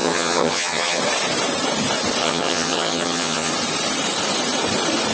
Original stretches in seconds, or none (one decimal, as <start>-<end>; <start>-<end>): 1.0-2.2; 3.5-5.1